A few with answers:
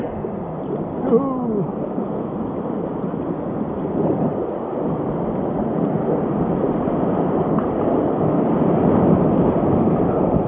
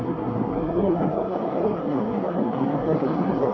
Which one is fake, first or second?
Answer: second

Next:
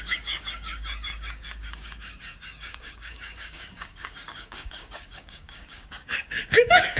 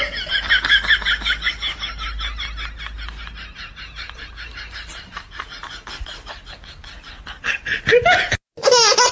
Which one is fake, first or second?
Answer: first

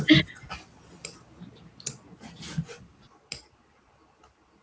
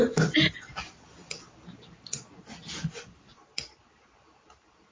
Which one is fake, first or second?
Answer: second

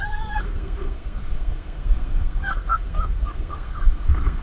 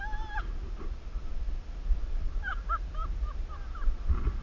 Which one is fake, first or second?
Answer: first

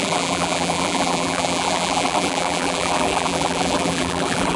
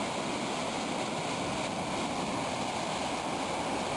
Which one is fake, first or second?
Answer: first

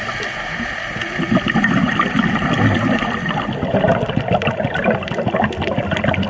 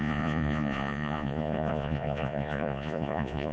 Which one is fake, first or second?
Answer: second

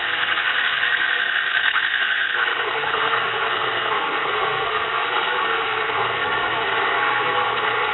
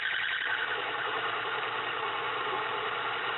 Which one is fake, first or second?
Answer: first